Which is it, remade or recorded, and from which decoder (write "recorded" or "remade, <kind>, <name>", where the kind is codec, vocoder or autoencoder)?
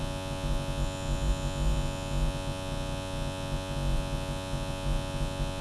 remade, vocoder, Vocos